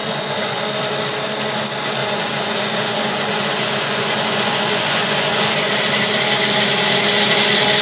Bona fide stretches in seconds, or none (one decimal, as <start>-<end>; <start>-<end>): 0.6-2.0; 5.7-7.8